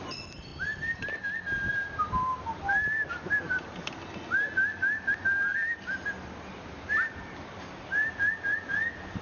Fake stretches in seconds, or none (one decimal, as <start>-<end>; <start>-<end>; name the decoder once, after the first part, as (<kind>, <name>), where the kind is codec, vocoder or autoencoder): none